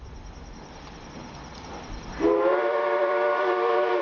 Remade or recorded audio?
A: remade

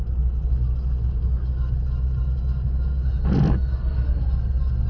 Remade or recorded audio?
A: recorded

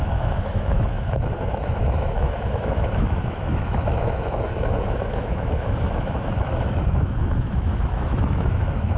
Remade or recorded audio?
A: remade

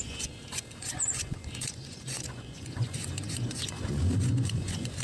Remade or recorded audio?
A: remade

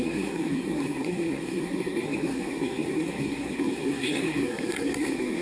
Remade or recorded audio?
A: remade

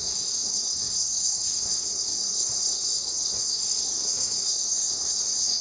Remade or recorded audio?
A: remade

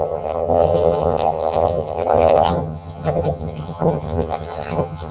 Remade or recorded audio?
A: remade